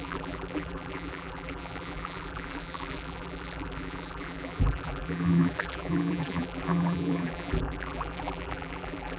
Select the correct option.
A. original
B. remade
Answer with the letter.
B